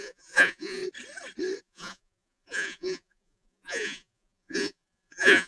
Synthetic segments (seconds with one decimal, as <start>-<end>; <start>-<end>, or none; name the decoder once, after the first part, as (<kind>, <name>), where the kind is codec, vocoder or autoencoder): 0.0-0.8 (vocoder, Vocos); 1.6-5.5